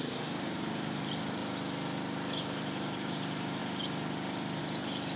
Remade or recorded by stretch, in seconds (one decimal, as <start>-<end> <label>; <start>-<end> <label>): 0.0-1.4 remade; 1.4-2.4 recorded; 2.4-3.6 remade; 3.6-4.6 recorded; 4.6-5.2 remade